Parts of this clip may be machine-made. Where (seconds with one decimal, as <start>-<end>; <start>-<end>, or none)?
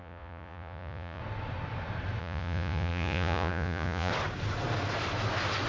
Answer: 0.0-1.2; 2.2-4.1